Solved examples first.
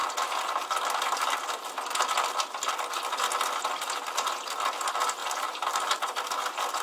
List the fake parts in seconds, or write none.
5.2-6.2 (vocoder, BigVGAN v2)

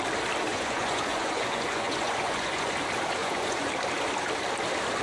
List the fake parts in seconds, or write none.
0.5-2.7 (vocoder, Vocos); 3.2-3.7

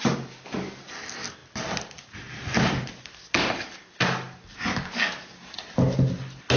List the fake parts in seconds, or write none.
none

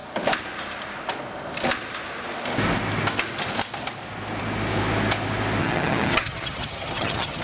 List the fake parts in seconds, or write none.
5.6-7.4 (vocoder, HiFi-GAN)

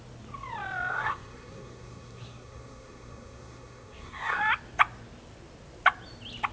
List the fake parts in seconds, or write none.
0.9-4.4 (codec, SNAC)

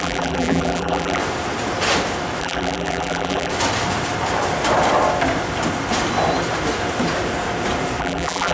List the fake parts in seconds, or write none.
0.0-1.2 (vocoder, BigVGAN v2); 2.4-3.5; 8.0-8.5